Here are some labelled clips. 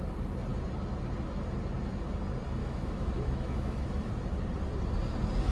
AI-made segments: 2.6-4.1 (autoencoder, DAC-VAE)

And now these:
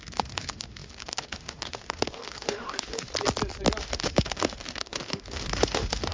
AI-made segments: 0.0-3.1 (autoencoder, DAC-VAE); 3.8-6.1

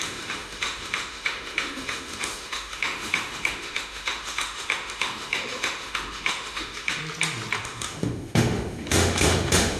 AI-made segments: 0.0-7.0 (autoencoder, DAC-VAE); 7.6-9.8

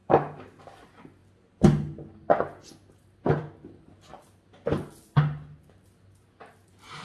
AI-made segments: 0.0-0.6 (autoencoder, DAC-VAE)

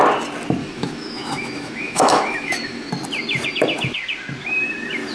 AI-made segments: 0.6-2.9 (autoencoder, DAC-VAE)

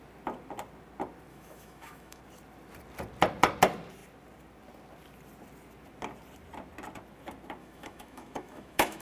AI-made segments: 1.3-2.2 (autoencoder, DAC-VAE); 7.6-9.0

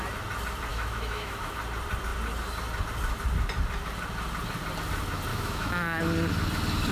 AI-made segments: 0.7-1.6 (autoencoder, DAC-VAE); 5.3-6.0